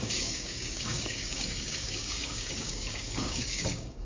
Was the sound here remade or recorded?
remade